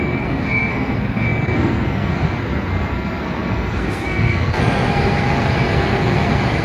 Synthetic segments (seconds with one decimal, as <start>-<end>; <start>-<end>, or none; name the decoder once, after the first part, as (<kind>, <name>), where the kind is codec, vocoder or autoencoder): 0.0-6.6 (codec, SNAC)